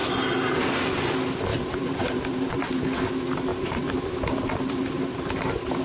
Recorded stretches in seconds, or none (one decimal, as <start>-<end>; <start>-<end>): 0.0-1.5; 3.1-3.5; 5.3-5.8